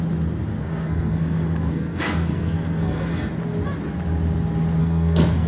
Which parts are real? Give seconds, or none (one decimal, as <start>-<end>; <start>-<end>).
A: 0.0-0.6; 3.3-4.8